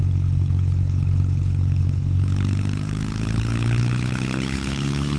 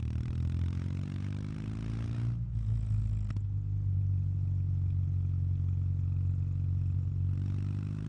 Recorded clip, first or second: second